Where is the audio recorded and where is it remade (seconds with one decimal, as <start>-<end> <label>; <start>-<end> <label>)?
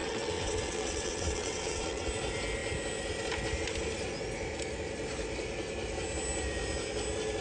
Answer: 0.0-2.1 remade; 2.1-7.4 recorded